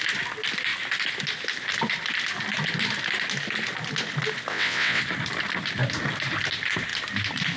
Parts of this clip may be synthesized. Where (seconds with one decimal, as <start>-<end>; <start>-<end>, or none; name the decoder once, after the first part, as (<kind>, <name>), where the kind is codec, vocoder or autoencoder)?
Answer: 4.5-5.0 (vocoder, WaveNeXt)